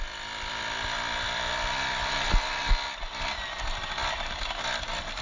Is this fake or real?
real